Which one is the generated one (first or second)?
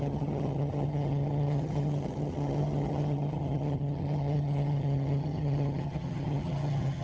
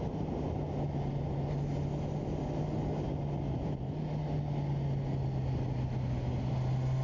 first